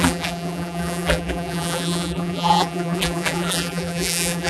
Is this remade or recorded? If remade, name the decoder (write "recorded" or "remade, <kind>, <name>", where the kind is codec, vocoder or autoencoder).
remade, vocoder, BigVGAN v2